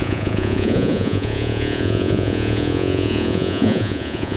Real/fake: fake